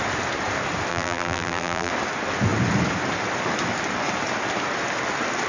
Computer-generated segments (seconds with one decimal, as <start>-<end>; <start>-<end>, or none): 0.9-1.9